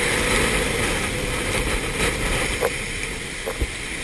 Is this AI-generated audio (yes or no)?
no